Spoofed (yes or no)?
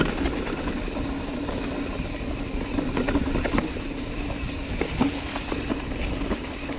no